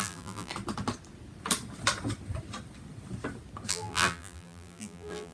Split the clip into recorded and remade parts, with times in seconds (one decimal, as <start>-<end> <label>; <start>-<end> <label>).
0.0-0.5 remade; 0.5-3.7 recorded; 3.7-5.3 remade